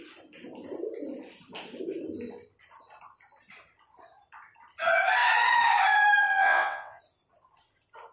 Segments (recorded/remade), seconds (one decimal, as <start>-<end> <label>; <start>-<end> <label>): 0.0-6.2 recorded; 6.2-7.0 remade; 7.0-8.1 recorded